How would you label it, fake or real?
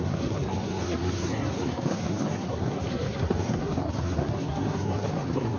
fake